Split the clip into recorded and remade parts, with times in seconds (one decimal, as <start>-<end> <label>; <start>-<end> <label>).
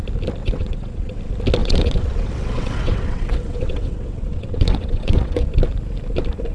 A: 0.0-0.4 recorded; 0.4-1.2 remade; 1.2-1.6 recorded; 1.6-5.5 remade; 5.5-6.5 recorded